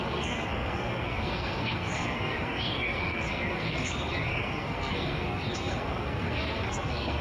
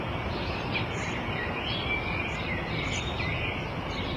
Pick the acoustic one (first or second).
second